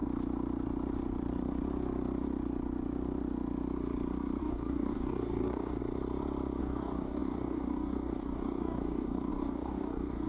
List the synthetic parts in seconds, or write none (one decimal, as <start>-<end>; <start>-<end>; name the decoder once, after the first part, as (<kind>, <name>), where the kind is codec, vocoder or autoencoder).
4.4-5.8 (codec, DAC); 6.6-10.3